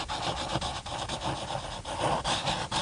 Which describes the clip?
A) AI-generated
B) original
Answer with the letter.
B